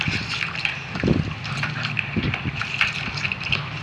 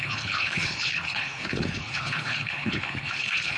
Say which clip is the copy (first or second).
second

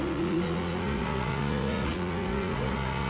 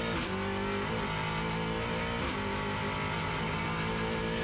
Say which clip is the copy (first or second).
first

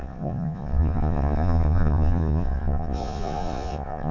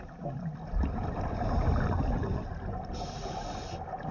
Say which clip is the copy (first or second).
first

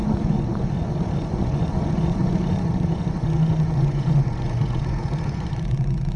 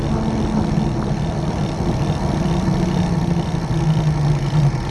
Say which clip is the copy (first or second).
first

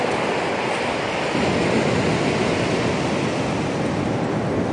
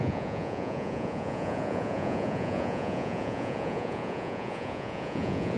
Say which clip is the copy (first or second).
second